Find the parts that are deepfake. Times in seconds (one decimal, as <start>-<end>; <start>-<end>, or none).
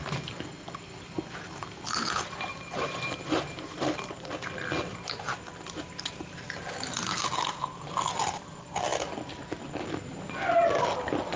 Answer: 2.5-4.2; 4.9-6.6